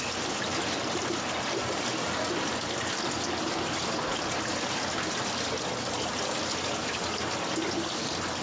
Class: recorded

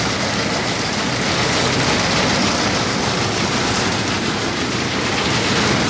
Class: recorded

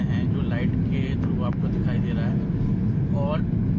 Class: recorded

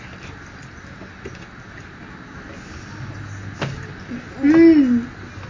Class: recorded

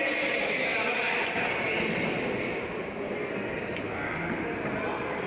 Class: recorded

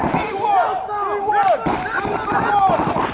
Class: recorded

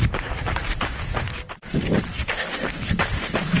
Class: remade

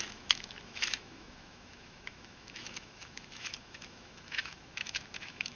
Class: remade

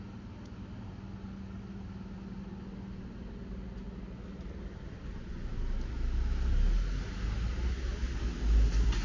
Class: recorded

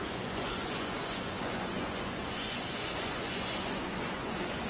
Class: remade